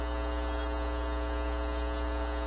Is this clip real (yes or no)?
yes